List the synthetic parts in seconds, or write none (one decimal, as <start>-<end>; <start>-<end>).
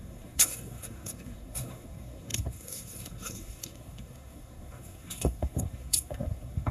0.0-6.7